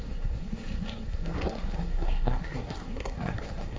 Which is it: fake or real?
fake